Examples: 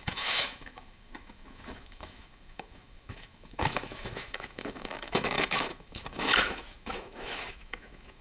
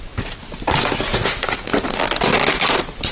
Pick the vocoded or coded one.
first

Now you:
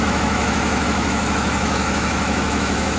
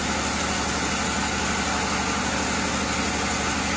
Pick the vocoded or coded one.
first